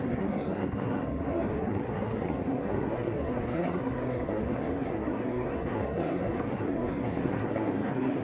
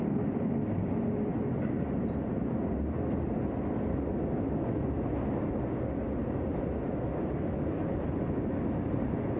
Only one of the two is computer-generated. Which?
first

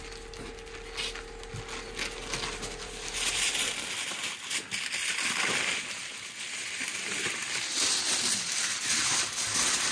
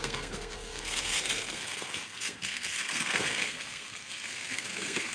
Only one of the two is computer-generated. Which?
second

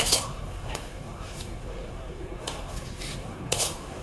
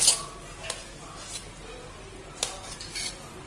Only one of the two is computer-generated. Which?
first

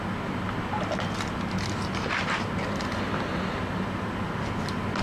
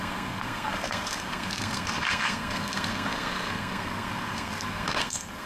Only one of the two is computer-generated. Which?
second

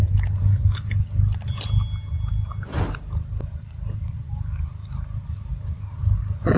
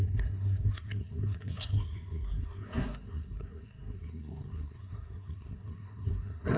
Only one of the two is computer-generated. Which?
second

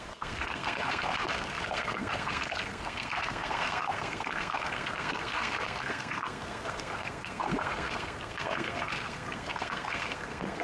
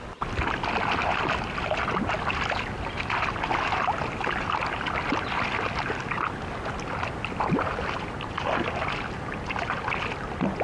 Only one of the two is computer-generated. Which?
first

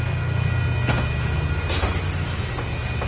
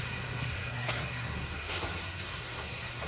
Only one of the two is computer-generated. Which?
second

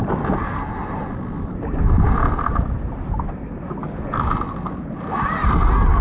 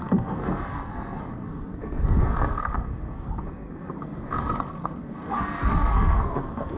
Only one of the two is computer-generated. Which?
second